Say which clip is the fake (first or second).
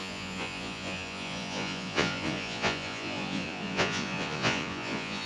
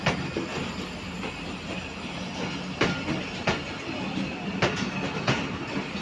first